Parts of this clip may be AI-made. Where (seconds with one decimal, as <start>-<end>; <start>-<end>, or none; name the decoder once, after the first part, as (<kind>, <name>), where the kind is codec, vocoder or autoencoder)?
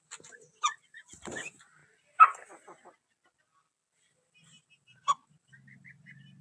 none